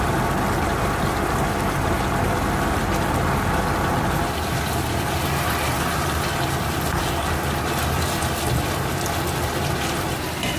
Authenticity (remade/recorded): recorded